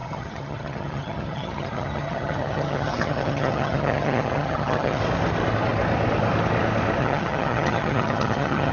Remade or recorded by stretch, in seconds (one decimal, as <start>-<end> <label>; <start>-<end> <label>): 0.0-5.0 remade; 5.0-7.0 recorded; 7.0-8.7 remade